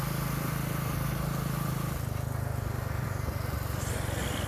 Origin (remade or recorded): recorded